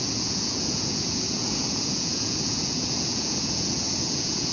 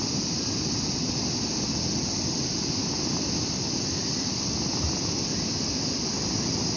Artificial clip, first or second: first